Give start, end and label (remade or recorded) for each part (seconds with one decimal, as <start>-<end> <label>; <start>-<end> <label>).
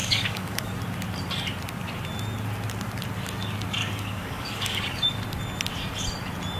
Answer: 0.0-0.7 remade; 0.7-3.8 recorded; 3.8-4.8 remade; 4.8-6.6 recorded